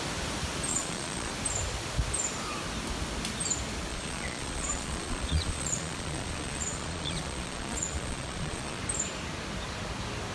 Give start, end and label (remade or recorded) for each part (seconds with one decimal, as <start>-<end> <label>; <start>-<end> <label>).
0.0-0.7 recorded; 0.7-1.3 remade; 1.3-3.9 recorded; 3.9-8.8 remade; 8.8-10.3 recorded